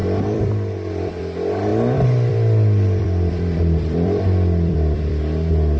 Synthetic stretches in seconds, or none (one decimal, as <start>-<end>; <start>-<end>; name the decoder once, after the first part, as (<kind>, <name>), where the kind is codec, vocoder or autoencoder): 0.0-1.2 (vocoder, BigVGAN v2); 1.7-5.2